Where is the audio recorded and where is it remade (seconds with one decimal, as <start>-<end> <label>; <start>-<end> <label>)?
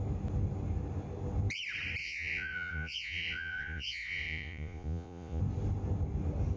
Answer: 0.0-2.0 recorded; 2.0-5.4 remade; 5.4-6.6 recorded